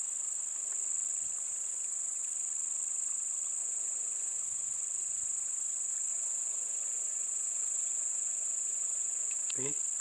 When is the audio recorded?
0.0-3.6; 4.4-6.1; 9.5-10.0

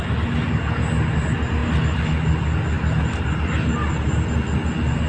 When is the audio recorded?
0.0-5.1

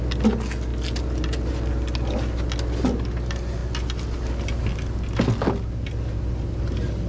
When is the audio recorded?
0.0-7.1

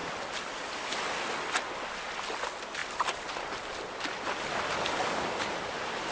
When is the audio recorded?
0.5-2.8; 3.6-6.1

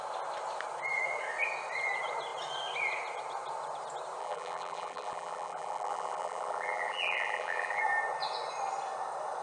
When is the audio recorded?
0.0-4.2; 7.8-9.4

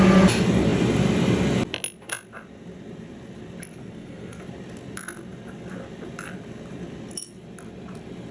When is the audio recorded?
0.0-3.8; 4.4-8.3

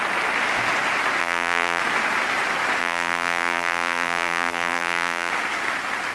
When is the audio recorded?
0.0-1.2; 1.8-2.8; 5.3-6.1

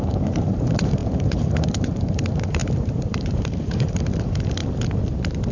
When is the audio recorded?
4.6-5.5